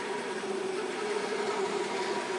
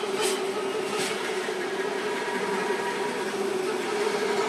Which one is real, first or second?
second